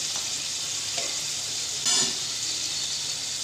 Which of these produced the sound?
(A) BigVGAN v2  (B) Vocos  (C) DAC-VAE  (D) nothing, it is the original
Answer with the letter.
D